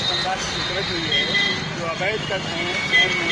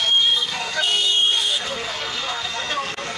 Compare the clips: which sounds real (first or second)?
first